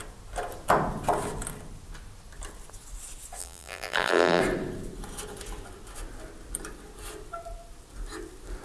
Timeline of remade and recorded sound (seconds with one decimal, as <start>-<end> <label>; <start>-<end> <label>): 0.0-3.4 recorded; 3.4-4.4 remade; 4.4-8.6 recorded